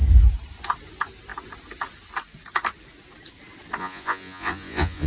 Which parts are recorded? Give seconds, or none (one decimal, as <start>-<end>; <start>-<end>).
0.0-3.8

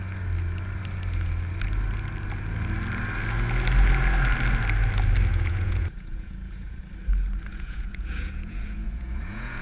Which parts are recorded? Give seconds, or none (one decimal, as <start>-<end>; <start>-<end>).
0.0-5.3; 6.8-7.5

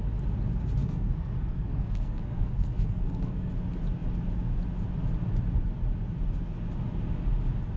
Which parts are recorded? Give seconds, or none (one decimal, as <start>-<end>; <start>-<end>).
0.0-0.8; 3.5-7.8

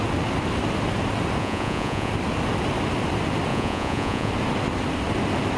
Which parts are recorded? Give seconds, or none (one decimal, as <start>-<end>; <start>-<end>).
0.0-1.4; 2.1-3.5; 4.3-5.6

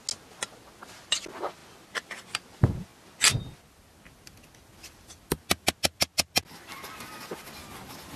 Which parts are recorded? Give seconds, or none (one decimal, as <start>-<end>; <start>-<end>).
0.0-8.2

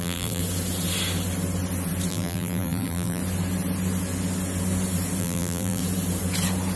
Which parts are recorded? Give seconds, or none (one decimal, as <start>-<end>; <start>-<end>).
0.4-2.1; 3.2-5.2; 5.8-6.8

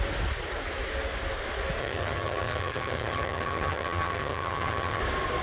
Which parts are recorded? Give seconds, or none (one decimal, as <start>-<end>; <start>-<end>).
0.0-1.8; 5.0-5.4